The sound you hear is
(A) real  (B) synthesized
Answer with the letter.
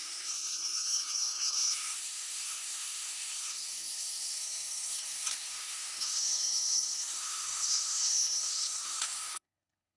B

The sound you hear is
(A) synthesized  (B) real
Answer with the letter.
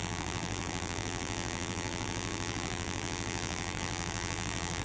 A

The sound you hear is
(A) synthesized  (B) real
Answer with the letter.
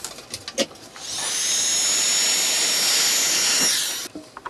B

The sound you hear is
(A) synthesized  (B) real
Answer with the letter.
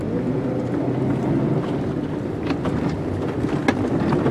B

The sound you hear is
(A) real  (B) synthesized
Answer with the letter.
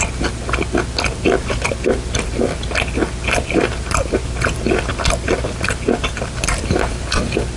A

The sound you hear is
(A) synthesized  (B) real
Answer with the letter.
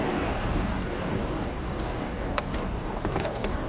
A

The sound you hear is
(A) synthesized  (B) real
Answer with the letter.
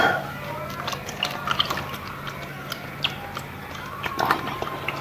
B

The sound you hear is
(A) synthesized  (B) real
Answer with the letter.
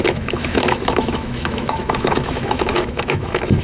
A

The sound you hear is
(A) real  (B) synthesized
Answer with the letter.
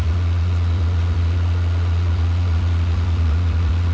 B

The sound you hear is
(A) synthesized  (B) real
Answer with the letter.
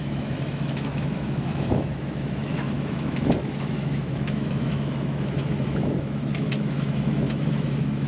A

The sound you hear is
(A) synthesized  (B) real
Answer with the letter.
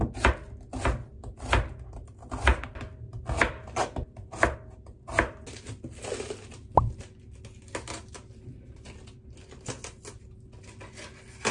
B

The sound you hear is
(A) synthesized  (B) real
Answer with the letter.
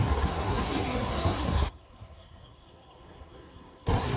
A